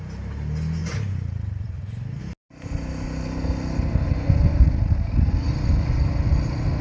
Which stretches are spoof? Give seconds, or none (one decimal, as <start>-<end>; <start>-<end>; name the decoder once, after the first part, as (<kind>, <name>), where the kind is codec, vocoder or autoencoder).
0.8-2.2 (vocoder, BigVGAN v2)